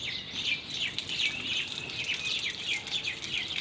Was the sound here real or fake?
real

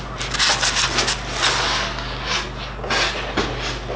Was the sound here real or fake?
real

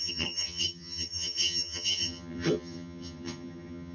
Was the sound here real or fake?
fake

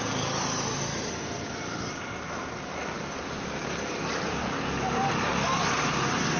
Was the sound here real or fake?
real